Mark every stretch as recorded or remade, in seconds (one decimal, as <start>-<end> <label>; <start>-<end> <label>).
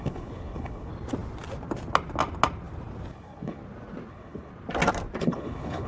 0.0-0.9 remade; 0.9-3.1 recorded; 3.1-3.6 remade; 3.6-4.1 recorded; 4.1-4.5 remade; 4.5-5.2 recorded; 5.2-5.9 remade